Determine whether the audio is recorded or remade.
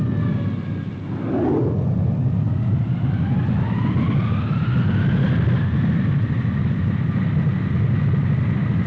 recorded